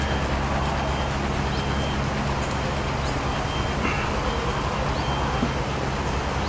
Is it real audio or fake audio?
real